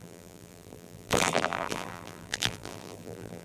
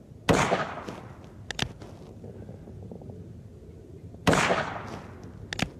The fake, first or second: first